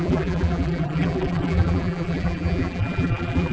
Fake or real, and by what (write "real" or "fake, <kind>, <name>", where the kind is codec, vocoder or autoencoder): fake, vocoder, BigVGAN v2